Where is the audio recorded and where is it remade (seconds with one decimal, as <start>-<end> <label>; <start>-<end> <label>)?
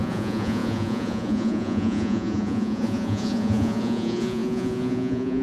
0.0-5.4 remade